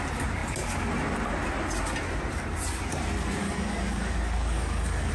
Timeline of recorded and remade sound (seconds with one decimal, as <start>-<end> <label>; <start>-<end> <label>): 0.0-3.4 recorded; 3.4-5.1 remade